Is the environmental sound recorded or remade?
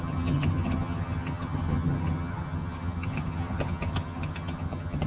remade